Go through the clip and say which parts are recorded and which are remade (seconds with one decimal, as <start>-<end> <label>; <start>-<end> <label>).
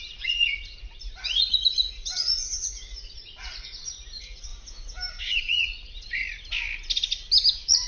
0.0-4.5 remade; 4.5-5.2 recorded; 5.2-6.2 remade; 6.2-7.5 recorded; 7.5-7.9 remade